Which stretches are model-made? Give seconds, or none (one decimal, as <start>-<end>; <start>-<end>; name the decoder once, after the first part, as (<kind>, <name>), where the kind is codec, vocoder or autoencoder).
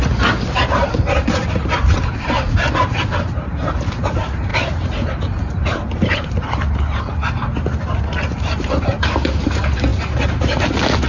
4.5-7.0 (vocoder, BigVGAN v2)